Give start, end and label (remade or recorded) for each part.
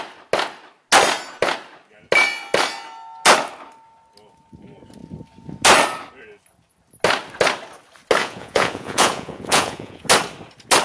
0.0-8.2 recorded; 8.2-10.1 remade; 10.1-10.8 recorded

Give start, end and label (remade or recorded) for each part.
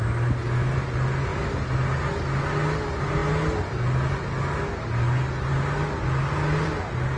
0.0-7.2 recorded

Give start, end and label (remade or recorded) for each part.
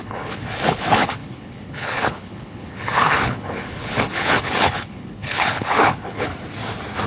0.0-6.3 remade; 6.3-7.1 recorded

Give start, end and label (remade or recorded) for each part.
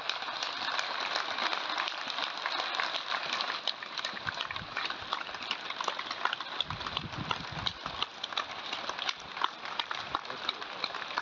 0.0-11.2 recorded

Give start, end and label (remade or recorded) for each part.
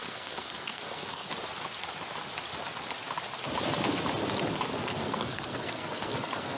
0.0-1.3 remade; 1.3-4.8 recorded; 4.8-6.6 remade